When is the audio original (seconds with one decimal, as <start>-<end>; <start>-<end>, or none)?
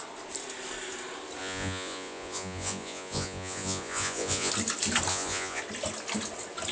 0.0-1.4; 4.5-5.1; 5.6-6.7